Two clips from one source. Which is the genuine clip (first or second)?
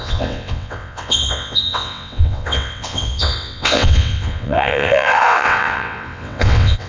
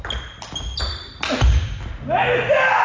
second